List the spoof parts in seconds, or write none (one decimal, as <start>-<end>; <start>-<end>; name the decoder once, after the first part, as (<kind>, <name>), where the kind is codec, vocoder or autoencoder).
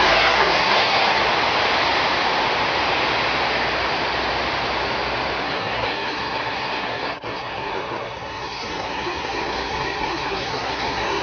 0.0-1.2 (codec, SNAC); 5.4-11.2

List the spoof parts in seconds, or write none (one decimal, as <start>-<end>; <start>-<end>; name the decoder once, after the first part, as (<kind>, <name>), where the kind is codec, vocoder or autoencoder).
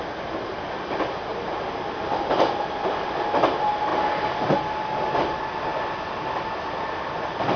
none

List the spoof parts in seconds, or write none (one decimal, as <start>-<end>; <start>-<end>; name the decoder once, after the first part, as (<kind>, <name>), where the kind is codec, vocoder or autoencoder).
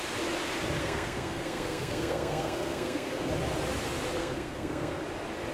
0.8-3.3 (codec, SNAC); 4.2-5.0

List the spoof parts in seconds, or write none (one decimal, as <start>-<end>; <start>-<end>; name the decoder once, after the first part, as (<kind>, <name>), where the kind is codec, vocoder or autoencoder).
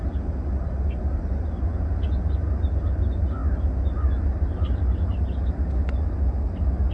none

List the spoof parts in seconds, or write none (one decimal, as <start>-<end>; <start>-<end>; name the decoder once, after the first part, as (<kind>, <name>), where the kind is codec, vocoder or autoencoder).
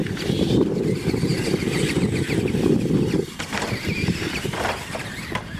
none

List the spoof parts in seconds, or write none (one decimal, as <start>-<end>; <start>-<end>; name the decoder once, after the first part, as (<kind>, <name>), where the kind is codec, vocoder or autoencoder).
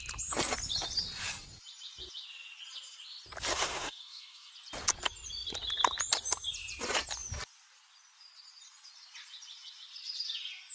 3.5-4.5 (codec, SNAC)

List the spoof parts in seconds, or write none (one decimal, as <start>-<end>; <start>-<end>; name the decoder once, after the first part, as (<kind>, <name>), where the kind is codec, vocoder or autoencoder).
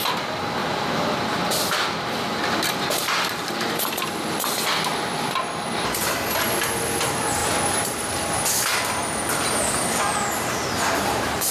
none